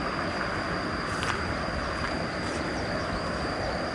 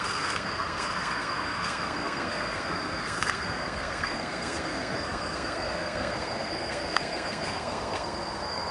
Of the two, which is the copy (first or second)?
second